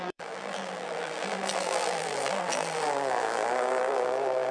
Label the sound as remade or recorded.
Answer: remade